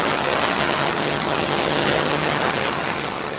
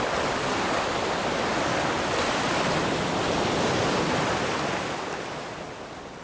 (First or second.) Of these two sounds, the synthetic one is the first